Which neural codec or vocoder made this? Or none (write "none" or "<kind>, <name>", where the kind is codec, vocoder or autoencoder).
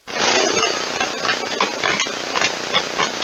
none